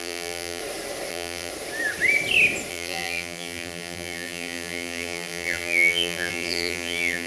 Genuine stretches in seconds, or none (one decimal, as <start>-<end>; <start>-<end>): 0.6-1.1; 1.5-2.7